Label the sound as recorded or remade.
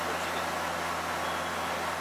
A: recorded